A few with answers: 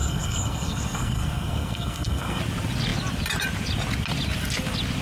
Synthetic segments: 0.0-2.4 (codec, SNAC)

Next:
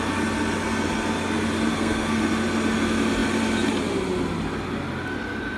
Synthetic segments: 1.7-2.2 (codec, SNAC)

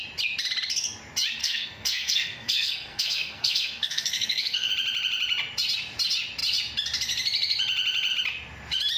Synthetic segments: 1.4-4.7 (codec, SNAC)

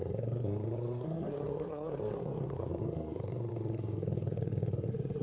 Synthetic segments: 0.0-5.2 (codec, SNAC)